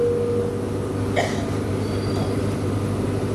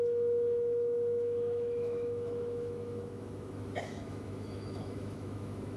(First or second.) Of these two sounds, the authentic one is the first